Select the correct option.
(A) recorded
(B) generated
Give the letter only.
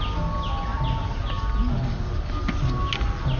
A